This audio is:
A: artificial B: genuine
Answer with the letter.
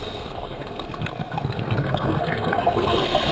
A